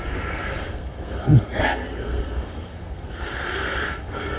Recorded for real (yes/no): no